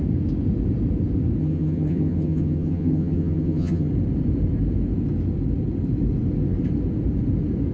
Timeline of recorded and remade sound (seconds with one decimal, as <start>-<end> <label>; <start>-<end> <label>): 0.0-1.4 recorded; 1.4-3.9 remade; 3.9-7.7 recorded